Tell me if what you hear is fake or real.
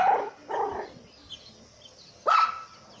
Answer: real